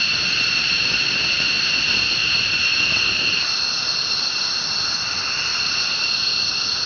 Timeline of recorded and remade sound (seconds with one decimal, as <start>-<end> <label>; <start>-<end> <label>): 0.0-6.9 recorded